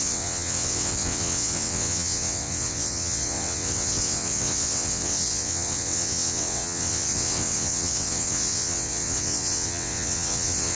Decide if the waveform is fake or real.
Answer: fake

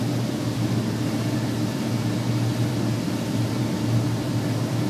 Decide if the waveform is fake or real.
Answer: real